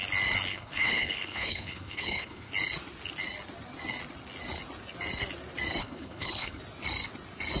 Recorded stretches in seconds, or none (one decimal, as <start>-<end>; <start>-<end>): 0.0-0.5; 2.5-5.8; 6.6-7.6